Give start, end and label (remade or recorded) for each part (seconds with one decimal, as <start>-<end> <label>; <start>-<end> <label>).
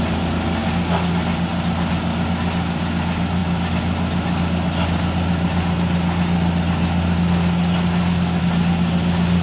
0.0-9.4 recorded